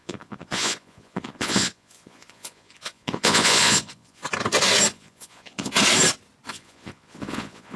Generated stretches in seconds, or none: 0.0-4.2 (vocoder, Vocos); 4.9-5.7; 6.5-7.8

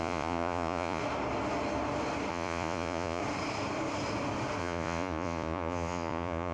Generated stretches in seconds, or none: 0.0-1.0 (vocoder, Vocos); 2.3-3.2; 4.6-6.5

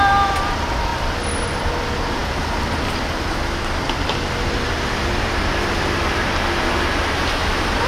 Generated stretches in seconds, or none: 0.9-1.6 (vocoder, BigVGAN v2)

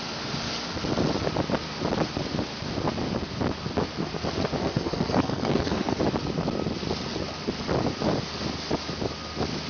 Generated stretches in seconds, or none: 4.6-6.0 (codec, SNAC)

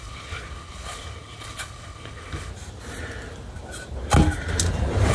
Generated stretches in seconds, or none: 0.0-2.5 (codec, HILCodec)

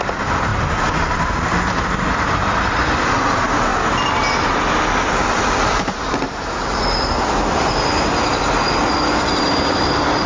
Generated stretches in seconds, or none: 0.0-0.5 (vocoder, BigVGAN v2); 1.0-3.7; 4.3-8.3; 8.9-10.3

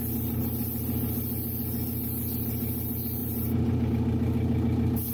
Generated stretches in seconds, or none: 3.2-3.9 (vocoder, BigVGAN v2)

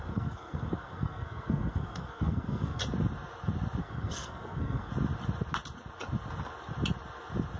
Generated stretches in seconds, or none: 0.0-2.8 (codec, SNAC); 3.8-4.9